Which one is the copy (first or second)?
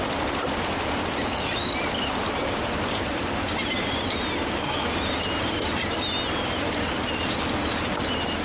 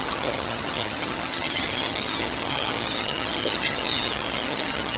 second